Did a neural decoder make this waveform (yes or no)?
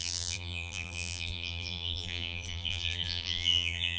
yes